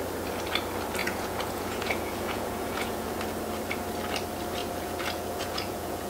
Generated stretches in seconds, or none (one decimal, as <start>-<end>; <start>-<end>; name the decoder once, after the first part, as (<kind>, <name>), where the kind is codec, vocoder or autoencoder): 1.0-3.1 (vocoder, Vocos); 4.6-6.1